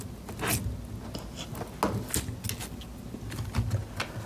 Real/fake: real